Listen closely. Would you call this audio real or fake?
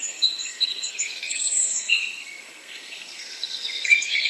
fake